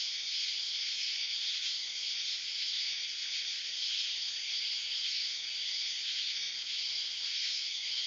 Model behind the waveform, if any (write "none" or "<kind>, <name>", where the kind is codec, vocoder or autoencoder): codec, SNAC